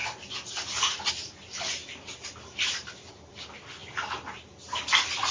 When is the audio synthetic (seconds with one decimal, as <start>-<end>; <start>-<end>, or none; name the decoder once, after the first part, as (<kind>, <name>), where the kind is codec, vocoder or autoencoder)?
none